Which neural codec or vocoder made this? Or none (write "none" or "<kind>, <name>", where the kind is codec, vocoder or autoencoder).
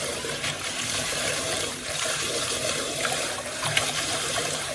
vocoder, BigVGAN v2